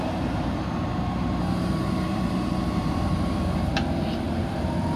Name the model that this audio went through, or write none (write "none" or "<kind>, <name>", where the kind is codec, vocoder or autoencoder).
vocoder, BigVGAN v2